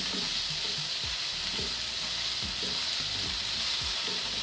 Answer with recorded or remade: remade